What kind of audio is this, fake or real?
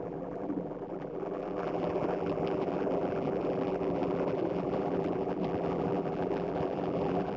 fake